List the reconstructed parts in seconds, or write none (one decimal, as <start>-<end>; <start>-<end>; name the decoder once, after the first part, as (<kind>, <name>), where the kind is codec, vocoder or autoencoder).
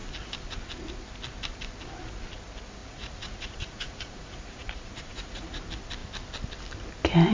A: 2.8-5.6 (vocoder, Vocos)